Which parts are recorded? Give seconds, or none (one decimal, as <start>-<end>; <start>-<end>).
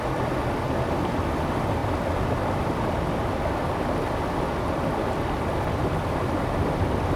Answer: 0.0-7.2